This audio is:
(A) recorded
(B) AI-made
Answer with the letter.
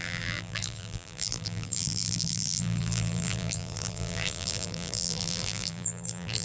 B